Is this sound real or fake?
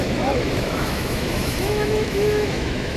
fake